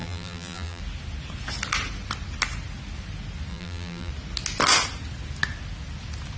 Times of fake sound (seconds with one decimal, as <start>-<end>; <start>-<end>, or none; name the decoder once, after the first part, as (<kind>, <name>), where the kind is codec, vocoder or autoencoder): 0.0-0.8 (vocoder, BigVGAN v2); 3.5-4.1